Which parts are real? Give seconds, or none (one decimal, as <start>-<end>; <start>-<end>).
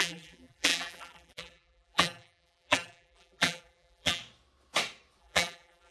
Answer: 4.2-5.2